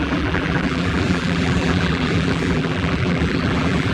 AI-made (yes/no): yes